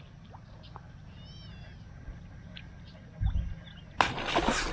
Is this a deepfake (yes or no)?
no